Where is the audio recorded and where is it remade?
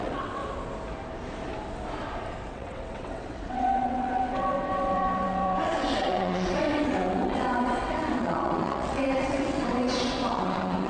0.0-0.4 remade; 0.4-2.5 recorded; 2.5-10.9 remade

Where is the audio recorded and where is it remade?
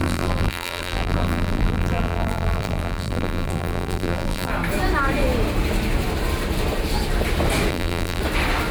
0.0-4.5 remade; 4.5-7.7 recorded; 7.7-8.2 remade; 8.2-8.7 recorded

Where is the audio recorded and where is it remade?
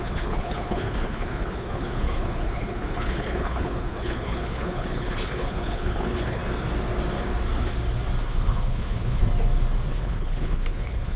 0.0-6.4 remade; 6.4-8.2 recorded; 8.2-9.2 remade; 9.2-9.9 recorded; 9.9-11.2 remade